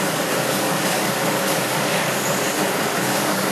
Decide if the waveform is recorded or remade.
remade